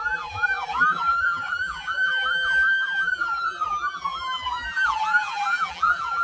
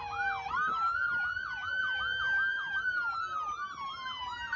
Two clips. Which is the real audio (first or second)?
second